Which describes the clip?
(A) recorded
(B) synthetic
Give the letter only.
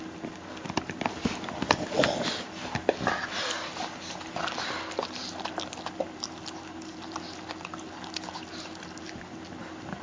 A